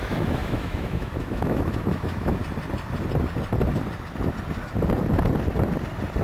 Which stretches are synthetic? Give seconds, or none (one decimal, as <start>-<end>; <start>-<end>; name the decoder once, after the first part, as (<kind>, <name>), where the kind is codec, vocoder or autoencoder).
0.0-2.4 (autoencoder, DAC-VAE)